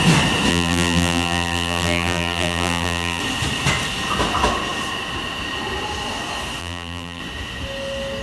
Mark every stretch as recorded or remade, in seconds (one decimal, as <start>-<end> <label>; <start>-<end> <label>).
0.0-0.5 recorded; 0.5-3.2 remade; 3.2-6.6 recorded; 6.6-7.2 remade; 7.2-8.2 recorded